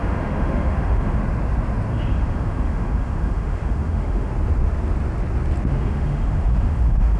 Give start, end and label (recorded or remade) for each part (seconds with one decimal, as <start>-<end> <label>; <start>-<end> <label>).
0.0-1.2 remade; 1.2-1.9 recorded; 1.9-4.3 remade; 4.3-5.7 recorded; 5.7-7.2 remade